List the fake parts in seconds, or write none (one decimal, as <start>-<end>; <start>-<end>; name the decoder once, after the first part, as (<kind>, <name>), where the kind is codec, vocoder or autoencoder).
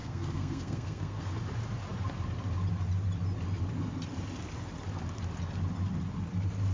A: 0.0-1.3 (codec, SNAC)